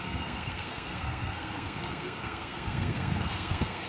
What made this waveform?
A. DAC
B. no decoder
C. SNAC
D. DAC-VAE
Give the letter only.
C